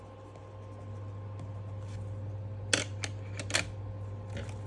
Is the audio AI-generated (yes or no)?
no